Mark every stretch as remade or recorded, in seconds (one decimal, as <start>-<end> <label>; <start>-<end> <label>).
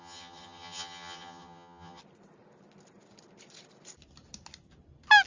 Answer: 0.0-2.0 remade; 2.0-5.3 recorded